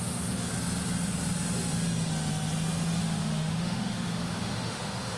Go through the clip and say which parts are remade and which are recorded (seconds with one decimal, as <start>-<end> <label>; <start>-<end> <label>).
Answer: 0.0-0.5 remade; 0.5-3.0 recorded; 3.0-5.2 remade